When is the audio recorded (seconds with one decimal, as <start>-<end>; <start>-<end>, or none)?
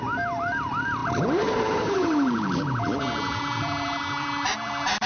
none